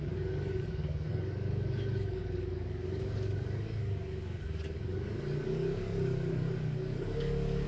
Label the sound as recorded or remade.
remade